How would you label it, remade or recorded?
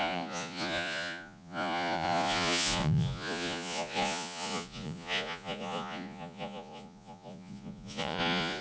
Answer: remade